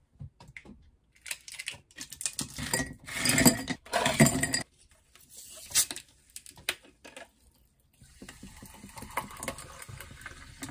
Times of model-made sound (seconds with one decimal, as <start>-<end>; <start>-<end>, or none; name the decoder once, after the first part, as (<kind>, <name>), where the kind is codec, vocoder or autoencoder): none